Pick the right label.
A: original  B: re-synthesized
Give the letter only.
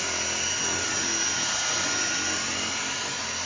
A